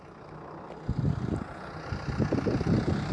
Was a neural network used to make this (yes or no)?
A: no